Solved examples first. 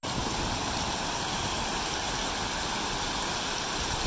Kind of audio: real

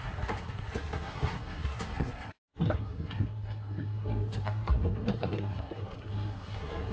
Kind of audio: fake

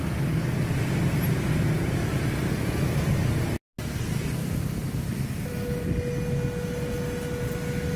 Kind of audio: real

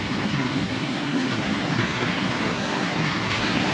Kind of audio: fake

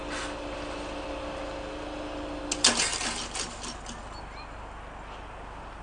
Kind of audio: real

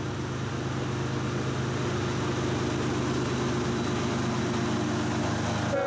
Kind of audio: real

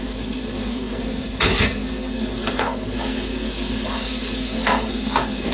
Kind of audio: fake